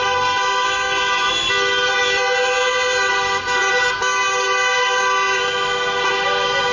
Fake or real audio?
real